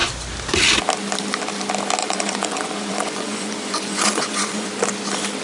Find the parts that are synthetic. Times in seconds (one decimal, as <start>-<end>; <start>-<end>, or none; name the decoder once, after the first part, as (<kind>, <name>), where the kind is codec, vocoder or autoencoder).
2.0-4.7 (vocoder, Vocos)